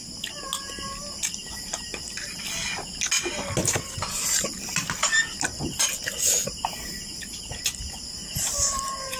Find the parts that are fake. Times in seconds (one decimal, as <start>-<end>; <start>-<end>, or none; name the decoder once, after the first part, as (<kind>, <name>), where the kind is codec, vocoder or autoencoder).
1.4-2.4 (vocoder, BigVGAN v2); 8.2-9.2